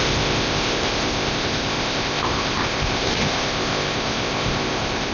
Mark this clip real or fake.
fake